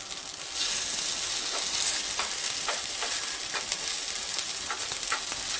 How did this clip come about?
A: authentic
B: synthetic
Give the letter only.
A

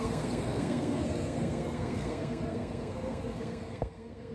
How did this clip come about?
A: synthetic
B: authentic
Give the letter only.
A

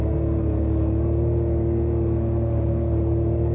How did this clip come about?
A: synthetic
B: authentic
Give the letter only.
B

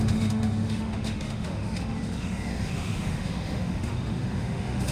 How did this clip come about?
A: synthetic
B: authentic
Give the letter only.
A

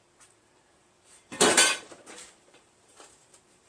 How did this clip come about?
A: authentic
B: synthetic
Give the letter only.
B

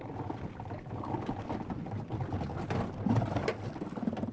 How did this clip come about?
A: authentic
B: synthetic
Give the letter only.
A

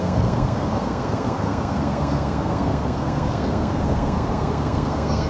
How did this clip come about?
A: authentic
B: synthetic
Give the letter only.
B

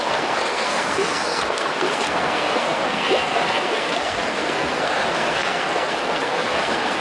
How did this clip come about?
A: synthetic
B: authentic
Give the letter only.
A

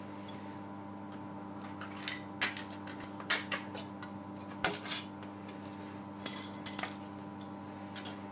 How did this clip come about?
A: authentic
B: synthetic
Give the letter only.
A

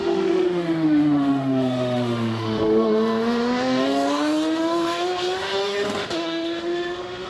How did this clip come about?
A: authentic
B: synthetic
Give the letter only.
B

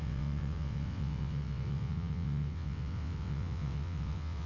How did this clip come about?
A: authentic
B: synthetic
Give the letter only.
B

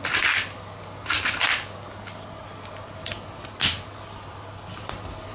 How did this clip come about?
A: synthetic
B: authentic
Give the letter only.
B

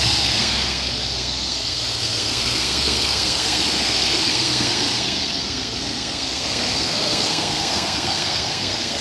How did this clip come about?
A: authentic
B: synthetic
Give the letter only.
B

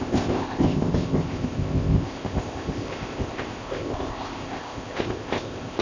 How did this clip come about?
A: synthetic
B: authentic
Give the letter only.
A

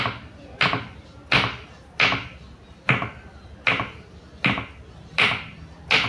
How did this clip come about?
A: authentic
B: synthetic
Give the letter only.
A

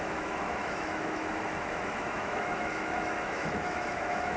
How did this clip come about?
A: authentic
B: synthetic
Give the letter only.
B